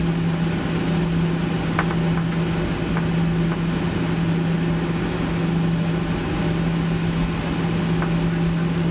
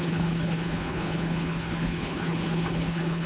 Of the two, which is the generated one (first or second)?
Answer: second